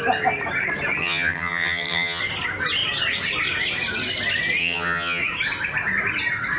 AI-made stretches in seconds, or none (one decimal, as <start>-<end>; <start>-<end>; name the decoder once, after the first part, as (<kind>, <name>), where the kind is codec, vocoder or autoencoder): 1.0-2.2 (vocoder, HiFi-GAN); 4.6-5.2